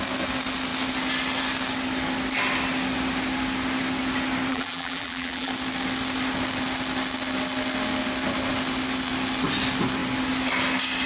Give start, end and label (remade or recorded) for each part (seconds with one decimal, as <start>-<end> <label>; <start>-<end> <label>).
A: 0.0-4.5 recorded; 4.5-5.5 remade; 5.5-11.1 recorded